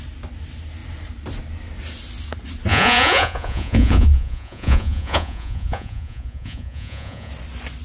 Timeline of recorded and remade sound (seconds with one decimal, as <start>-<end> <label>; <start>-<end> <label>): 0.0-2.7 recorded; 2.7-7.3 remade; 7.3-7.8 recorded

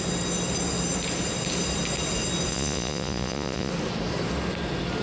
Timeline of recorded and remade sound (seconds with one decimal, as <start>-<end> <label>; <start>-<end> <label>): 0.0-2.5 recorded; 2.5-3.7 remade; 3.7-5.0 recorded

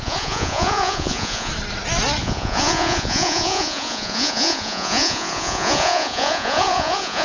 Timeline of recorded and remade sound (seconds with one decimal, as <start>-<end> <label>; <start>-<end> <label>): 0.0-1.5 remade; 1.5-2.2 recorded; 2.2-7.2 remade

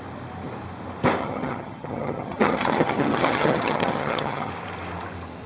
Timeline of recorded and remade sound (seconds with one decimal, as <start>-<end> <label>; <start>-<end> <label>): 0.0-1.2 recorded; 1.2-4.5 remade; 4.5-5.5 recorded

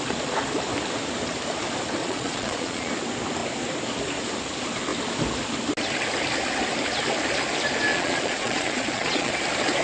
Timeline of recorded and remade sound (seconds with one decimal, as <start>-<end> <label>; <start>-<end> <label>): 0.0-2.0 recorded; 2.0-2.9 remade; 2.9-7.9 recorded; 7.9-9.3 remade; 9.3-9.8 recorded